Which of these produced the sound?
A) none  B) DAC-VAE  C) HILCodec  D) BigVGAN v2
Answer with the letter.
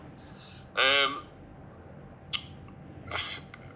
A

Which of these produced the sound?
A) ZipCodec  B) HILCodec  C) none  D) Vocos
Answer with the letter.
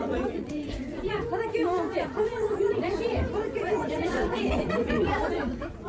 D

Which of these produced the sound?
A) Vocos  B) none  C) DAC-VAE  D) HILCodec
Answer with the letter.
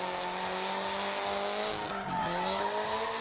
B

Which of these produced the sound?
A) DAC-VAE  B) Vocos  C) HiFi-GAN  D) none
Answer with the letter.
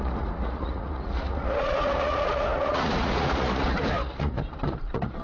B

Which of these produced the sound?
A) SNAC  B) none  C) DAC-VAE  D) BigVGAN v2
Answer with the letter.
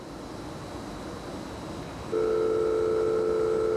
B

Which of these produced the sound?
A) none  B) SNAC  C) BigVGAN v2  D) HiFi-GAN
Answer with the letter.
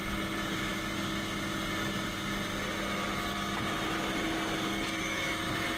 A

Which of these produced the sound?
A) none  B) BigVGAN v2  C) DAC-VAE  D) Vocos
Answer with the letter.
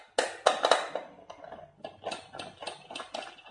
A